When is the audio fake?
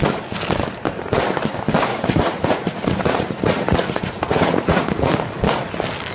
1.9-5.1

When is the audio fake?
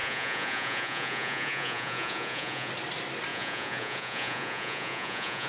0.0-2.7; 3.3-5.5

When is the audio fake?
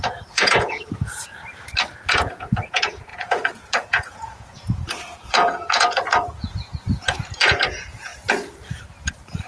0.0-1.3; 2.1-8.1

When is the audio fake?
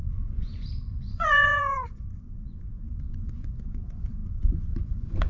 0.0-5.3